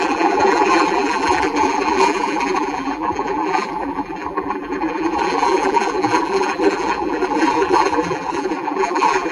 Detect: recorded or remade remade